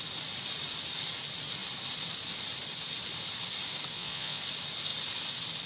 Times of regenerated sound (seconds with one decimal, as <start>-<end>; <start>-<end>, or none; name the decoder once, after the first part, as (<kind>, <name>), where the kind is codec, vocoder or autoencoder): 3.9-4.4 (vocoder, Vocos)